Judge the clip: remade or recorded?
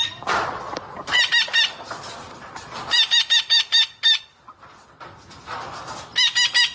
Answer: recorded